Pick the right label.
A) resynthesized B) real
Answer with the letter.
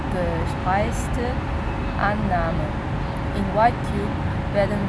B